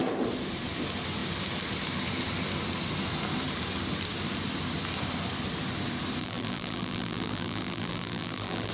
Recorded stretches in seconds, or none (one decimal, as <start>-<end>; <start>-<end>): 0.0-6.2